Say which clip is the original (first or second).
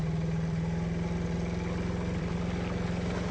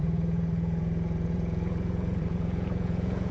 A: first